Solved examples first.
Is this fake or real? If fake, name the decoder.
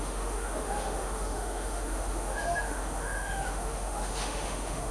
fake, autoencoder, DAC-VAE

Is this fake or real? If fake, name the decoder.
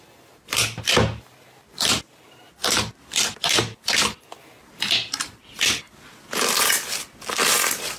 real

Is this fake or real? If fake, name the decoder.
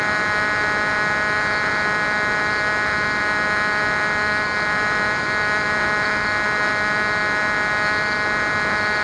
real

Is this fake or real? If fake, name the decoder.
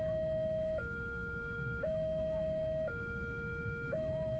fake, autoencoder, DAC-VAE